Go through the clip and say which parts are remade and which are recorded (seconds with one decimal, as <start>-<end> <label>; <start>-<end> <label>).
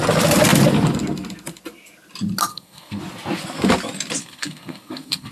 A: 0.0-2.5 recorded; 2.5-3.0 remade; 3.0-4.2 recorded; 4.2-5.3 remade